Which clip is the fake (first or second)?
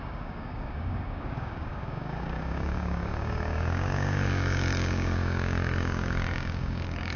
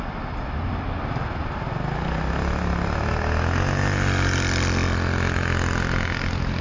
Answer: first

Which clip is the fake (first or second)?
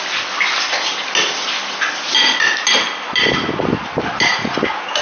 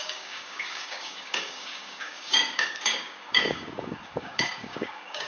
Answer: second